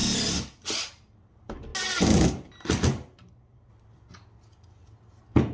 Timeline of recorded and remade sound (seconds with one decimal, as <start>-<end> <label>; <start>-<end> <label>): 0.0-5.5 recorded